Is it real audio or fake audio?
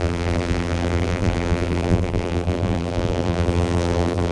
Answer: fake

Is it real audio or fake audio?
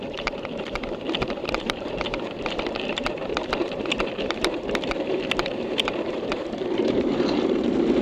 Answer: fake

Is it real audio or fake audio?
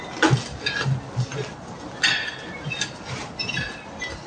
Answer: real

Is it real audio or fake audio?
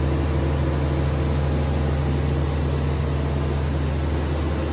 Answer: real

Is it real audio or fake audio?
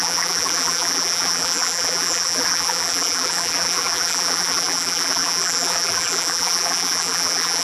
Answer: fake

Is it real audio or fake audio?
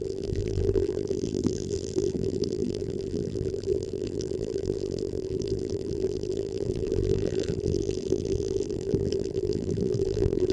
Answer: fake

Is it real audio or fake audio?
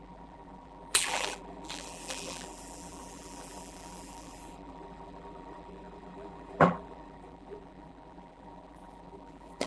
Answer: fake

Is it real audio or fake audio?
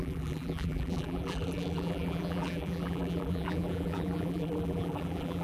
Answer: fake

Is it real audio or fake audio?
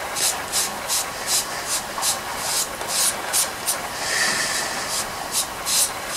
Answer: real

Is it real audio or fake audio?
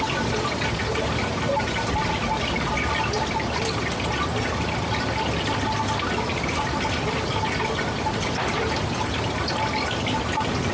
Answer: real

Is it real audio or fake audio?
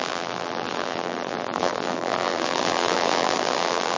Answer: fake